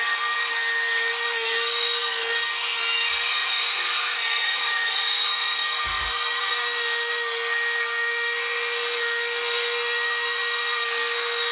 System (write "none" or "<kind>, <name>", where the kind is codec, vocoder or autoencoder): codec, SNAC